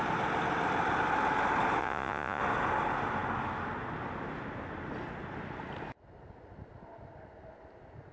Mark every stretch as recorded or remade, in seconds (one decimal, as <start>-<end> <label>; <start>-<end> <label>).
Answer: 0.0-1.8 recorded; 1.8-2.4 remade; 2.4-8.1 recorded